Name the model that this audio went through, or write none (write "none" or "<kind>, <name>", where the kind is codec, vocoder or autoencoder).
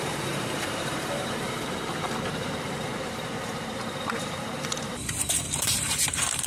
vocoder, BigVGAN v2